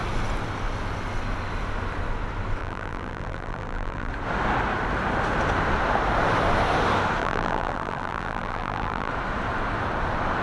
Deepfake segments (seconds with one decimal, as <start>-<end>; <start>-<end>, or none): 2.6-4.1; 7.2-9.1